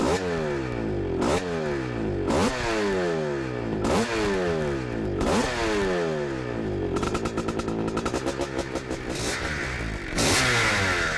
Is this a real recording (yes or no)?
yes